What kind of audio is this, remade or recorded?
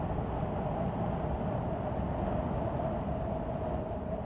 recorded